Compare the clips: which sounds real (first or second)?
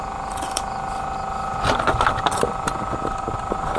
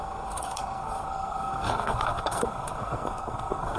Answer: first